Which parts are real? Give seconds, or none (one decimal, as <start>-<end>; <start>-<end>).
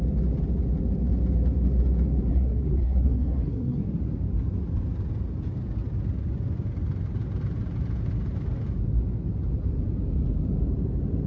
0.0-2.3; 3.9-11.3